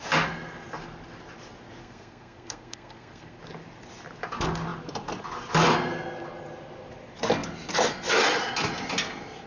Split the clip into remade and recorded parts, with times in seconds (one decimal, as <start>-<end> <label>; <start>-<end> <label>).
0.0-1.8 recorded; 1.8-3.4 remade; 3.4-9.5 recorded

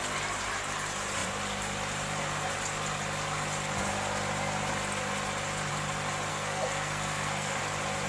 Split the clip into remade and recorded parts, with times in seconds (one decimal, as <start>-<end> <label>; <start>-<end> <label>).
0.0-6.3 recorded; 6.3-7.6 remade; 7.6-8.1 recorded

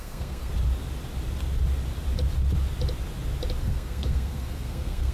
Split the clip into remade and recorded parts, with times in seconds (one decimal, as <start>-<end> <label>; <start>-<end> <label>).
0.0-0.5 remade; 0.5-3.6 recorded; 3.6-5.1 remade

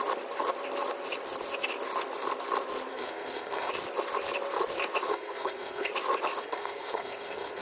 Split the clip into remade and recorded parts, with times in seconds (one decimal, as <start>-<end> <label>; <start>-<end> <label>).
0.0-2.9 recorded; 2.9-3.7 remade; 3.7-5.1 recorded; 5.1-5.9 remade; 5.9-6.4 recorded; 6.4-7.6 remade

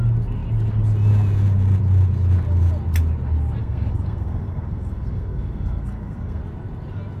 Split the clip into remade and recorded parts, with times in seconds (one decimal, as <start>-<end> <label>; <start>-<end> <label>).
0.0-3.6 recorded; 3.6-6.4 remade; 6.4-7.2 recorded

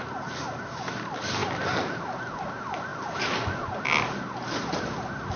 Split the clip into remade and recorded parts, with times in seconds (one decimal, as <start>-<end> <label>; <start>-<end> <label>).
0.0-5.4 recorded

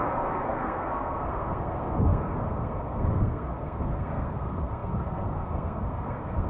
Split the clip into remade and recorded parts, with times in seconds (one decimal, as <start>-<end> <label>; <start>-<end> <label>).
0.0-6.5 remade